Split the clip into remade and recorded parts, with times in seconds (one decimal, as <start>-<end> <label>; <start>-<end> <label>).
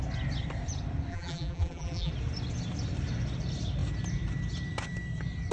0.0-1.1 recorded; 1.1-2.1 remade; 2.1-5.5 recorded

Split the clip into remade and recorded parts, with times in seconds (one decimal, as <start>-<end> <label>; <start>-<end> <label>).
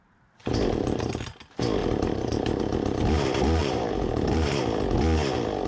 0.0-0.4 recorded; 0.4-1.1 remade; 1.1-1.8 recorded; 1.8-2.6 remade; 2.6-3.6 recorded; 3.6-4.6 remade; 4.6-5.7 recorded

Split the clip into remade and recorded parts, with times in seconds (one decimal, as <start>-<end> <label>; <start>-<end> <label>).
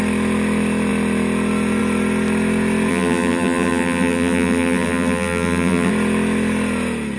0.0-2.9 recorded; 2.9-5.9 remade; 5.9-7.2 recorded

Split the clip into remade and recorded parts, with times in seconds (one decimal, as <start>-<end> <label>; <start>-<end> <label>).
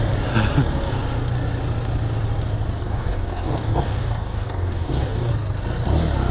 0.0-2.8 recorded; 2.8-5.3 remade; 5.3-6.3 recorded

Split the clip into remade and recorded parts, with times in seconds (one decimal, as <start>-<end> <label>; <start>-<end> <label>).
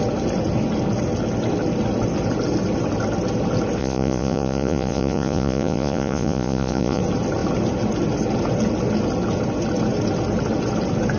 0.0-3.8 recorded; 3.8-7.0 remade; 7.0-11.2 recorded